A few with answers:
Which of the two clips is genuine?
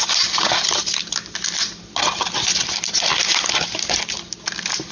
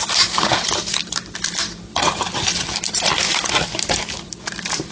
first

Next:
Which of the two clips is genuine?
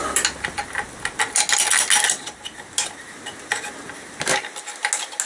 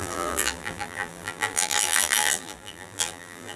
first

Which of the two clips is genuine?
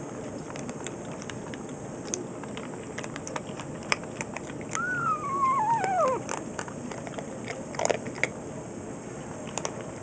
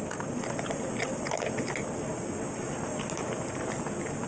second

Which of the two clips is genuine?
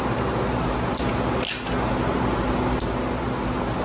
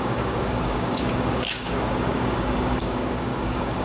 first